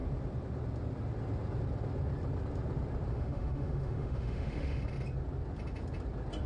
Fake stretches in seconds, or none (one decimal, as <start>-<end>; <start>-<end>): 3.1-4.8